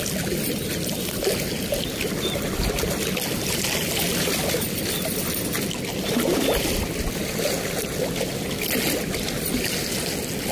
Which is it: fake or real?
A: real